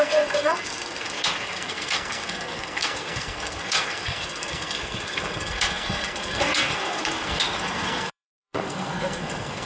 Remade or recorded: remade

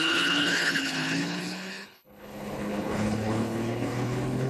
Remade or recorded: remade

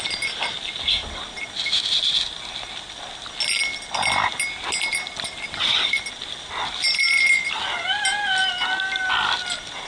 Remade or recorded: recorded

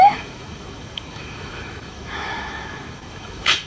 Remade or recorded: remade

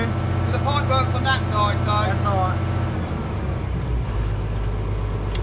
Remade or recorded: recorded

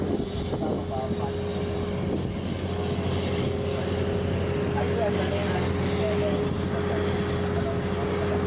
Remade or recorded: recorded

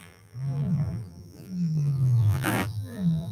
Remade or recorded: remade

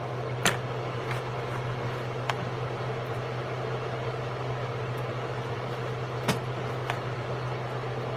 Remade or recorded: recorded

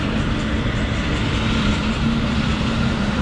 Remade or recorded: recorded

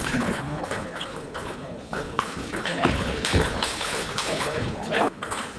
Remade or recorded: remade